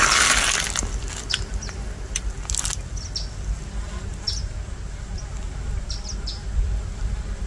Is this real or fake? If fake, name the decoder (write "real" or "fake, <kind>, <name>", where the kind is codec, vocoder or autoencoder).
real